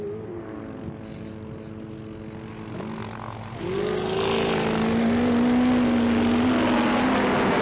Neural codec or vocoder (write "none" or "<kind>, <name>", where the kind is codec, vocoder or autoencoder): none